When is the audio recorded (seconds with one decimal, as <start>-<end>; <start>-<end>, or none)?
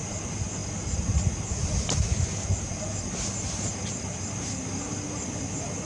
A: 0.0-5.8